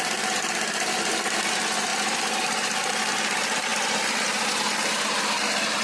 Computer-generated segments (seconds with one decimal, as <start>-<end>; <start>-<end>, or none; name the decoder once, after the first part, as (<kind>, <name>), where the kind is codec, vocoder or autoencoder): none